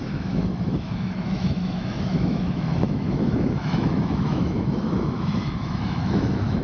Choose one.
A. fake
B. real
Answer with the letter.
A